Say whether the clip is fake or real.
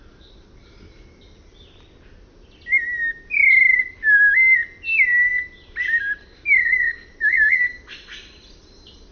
real